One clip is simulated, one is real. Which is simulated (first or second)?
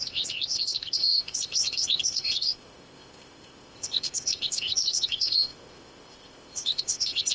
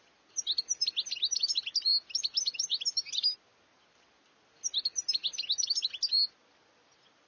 first